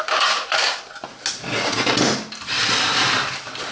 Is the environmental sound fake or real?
real